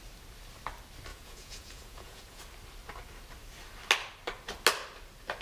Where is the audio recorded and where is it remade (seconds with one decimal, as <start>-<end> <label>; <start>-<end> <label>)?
0.0-1.1 recorded; 1.1-2.4 remade; 2.4-5.4 recorded